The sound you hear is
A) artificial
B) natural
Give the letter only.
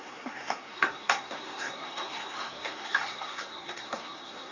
A